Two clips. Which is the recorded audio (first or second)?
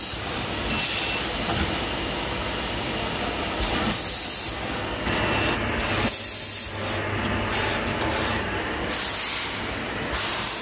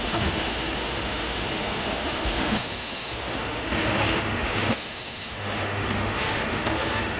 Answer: first